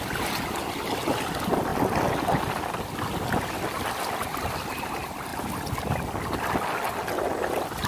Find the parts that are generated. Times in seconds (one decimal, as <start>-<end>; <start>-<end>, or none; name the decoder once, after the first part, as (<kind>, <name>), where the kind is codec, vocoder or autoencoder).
none